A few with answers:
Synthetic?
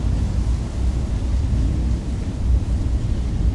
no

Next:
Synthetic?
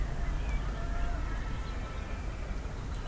no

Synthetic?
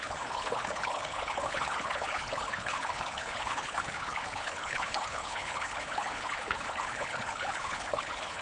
yes